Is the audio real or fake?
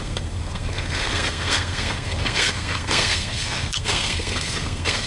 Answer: fake